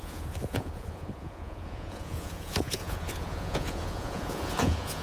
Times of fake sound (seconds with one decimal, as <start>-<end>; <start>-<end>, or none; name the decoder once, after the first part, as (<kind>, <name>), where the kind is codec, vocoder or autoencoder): 0.0-5.0 (vocoder, Vocos)